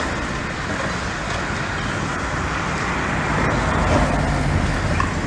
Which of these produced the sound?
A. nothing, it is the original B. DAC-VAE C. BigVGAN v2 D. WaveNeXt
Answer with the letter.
A